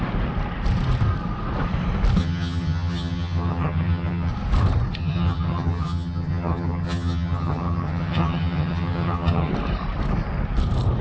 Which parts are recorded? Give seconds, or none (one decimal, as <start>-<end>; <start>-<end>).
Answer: 0.0-2.2; 4.3-5.0; 9.5-11.0